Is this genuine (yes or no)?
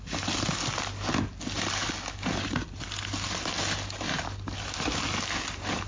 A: yes